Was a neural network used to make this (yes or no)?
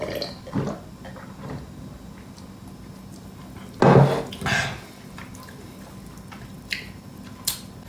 no